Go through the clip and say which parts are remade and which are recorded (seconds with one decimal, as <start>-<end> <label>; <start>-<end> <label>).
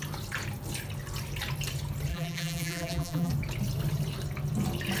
0.0-2.1 recorded; 2.1-3.3 remade; 3.3-5.0 recorded